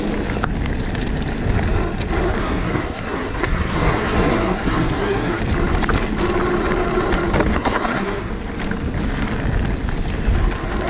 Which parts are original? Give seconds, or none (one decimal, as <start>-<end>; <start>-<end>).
0.0-2.4; 5.4-7.5; 8.3-10.9